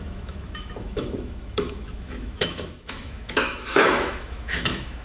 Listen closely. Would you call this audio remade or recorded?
remade